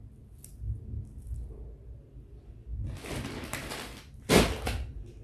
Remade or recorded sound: recorded